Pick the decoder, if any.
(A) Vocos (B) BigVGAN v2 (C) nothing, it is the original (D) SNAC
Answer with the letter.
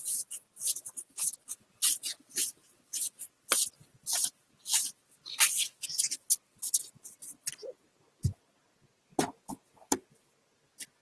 C